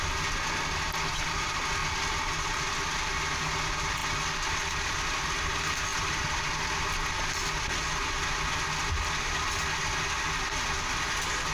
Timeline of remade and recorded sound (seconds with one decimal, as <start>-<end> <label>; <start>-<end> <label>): 0.0-11.5 recorded